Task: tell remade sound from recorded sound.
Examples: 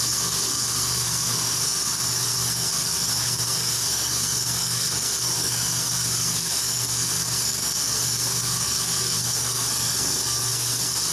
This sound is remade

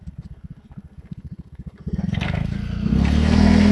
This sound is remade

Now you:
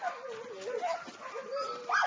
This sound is recorded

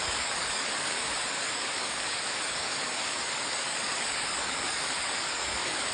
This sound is remade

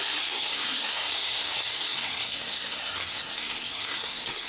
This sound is remade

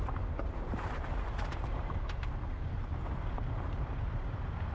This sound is remade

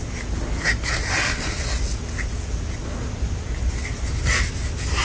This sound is recorded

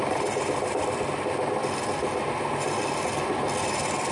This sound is recorded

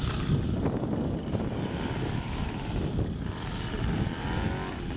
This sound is recorded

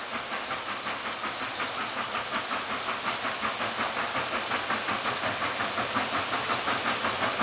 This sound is recorded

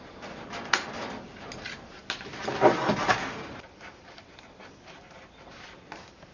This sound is recorded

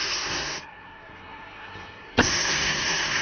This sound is remade